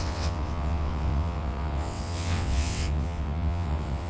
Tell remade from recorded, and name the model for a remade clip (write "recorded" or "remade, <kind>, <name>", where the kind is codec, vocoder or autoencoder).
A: remade, vocoder, WaveNeXt